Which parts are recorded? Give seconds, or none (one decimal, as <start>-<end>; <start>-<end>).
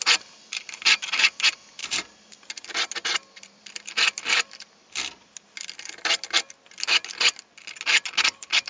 0.0-8.7